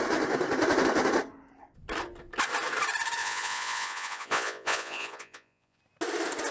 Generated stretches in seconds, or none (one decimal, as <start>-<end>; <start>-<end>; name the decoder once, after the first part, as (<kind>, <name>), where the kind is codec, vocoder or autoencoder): 3.2-5.8 (vocoder, Vocos)